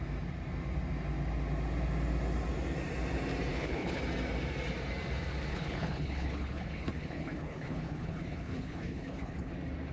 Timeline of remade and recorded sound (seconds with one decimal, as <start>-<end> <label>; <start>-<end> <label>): 0.0-3.5 recorded; 3.5-4.0 remade; 4.0-5.5 recorded; 5.5-9.5 remade; 9.5-9.9 recorded